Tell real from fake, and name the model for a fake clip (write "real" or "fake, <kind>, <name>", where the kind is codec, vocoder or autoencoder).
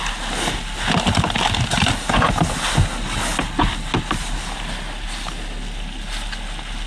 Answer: real